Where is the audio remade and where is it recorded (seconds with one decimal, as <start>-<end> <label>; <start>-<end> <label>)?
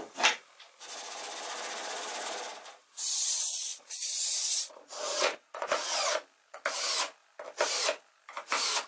0.0-1.8 recorded; 1.8-6.2 remade; 6.2-8.9 recorded